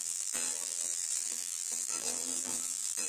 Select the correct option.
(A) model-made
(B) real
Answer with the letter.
A